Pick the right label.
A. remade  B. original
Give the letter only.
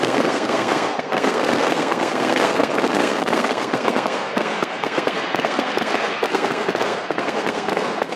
A